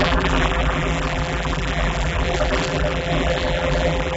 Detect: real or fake fake